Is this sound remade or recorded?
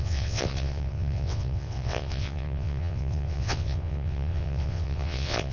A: remade